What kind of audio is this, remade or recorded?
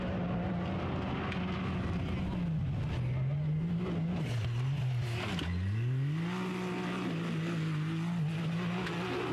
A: recorded